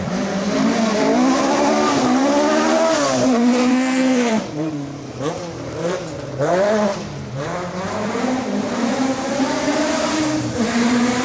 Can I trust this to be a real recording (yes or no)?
no